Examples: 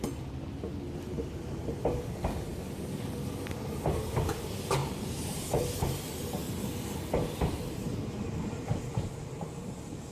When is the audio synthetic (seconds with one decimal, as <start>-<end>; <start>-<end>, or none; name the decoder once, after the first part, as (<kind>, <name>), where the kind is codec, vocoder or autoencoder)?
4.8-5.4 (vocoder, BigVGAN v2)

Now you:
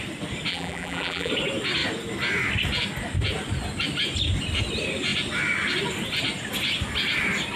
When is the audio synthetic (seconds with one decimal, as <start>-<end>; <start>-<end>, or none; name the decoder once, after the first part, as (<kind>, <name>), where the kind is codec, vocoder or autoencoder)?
0.5-1.3 (vocoder, BigVGAN v2)

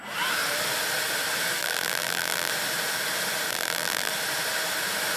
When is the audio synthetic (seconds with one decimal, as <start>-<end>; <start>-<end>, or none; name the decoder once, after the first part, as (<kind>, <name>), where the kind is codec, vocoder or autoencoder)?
1.6-2.5 (vocoder, BigVGAN v2); 3.5-4.1